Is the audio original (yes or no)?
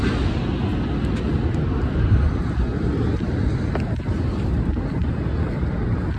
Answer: yes